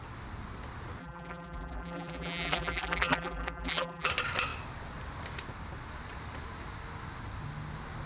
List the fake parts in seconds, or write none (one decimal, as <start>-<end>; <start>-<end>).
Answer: 1.0-4.1